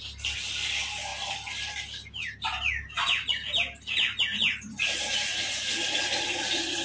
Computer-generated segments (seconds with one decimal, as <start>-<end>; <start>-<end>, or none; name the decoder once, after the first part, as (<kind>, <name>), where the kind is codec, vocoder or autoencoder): none